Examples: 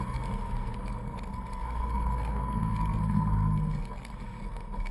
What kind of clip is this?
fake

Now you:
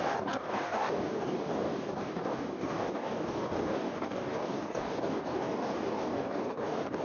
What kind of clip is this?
fake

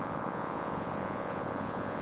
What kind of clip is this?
fake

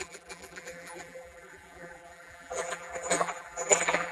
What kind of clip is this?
fake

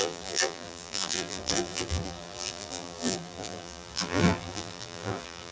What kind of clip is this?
fake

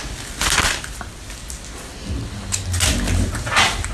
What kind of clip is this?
real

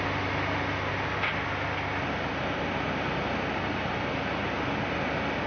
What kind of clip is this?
real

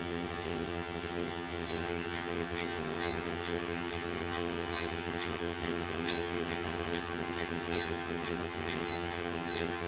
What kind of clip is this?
fake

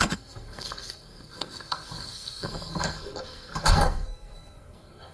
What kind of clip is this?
fake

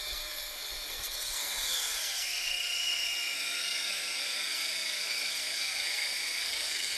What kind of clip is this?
fake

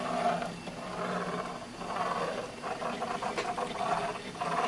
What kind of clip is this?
real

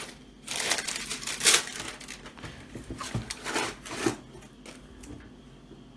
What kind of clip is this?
real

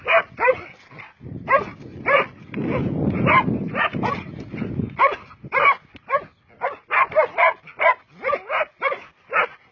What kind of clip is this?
real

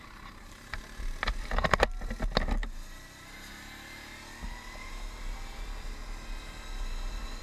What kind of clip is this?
real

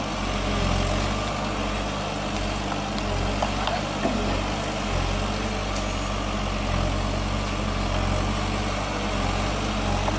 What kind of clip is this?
real